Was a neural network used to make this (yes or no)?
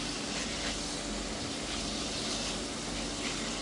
no